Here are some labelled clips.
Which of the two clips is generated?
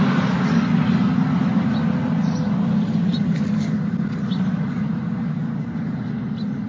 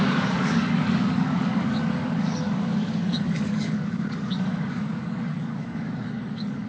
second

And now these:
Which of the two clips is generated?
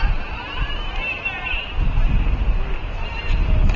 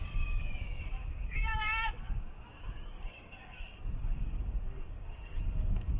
second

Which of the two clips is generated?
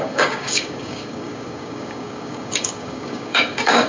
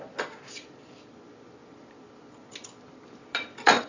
first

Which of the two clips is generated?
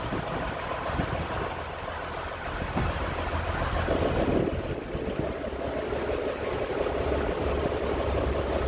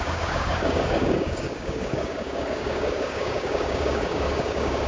second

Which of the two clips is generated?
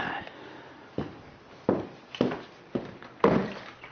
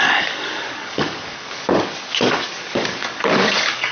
second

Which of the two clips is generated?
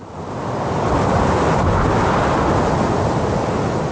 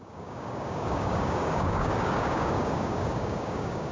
second